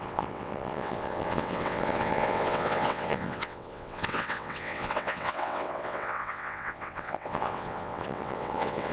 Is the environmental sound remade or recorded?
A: remade